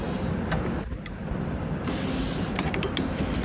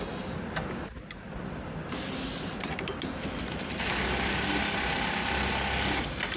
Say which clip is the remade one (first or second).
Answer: first